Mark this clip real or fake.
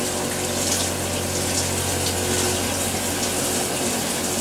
real